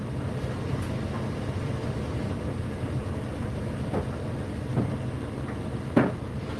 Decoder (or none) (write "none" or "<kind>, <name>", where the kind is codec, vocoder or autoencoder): none